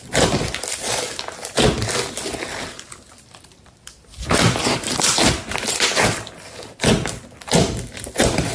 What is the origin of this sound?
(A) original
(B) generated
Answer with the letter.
A